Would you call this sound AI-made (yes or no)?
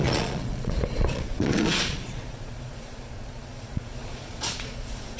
yes